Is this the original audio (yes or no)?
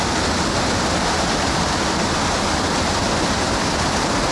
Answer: yes